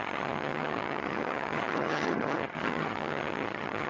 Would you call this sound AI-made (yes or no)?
yes